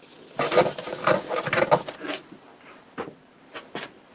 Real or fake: real